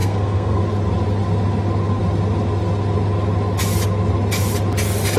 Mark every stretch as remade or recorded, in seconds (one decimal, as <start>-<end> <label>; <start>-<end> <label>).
0.0-0.6 remade; 0.6-5.2 recorded